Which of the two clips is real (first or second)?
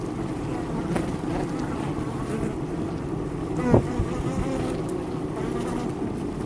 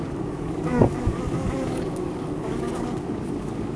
first